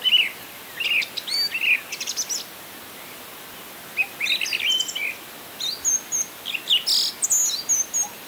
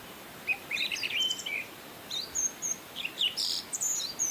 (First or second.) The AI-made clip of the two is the second